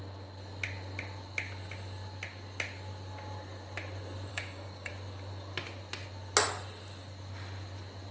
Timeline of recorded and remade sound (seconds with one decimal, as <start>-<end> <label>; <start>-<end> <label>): 0.0-4.3 recorded; 4.3-4.9 remade; 4.9-8.1 recorded